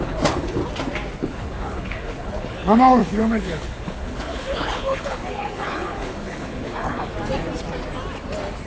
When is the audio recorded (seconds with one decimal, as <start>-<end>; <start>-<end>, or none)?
0.6-1.2; 7.1-8.7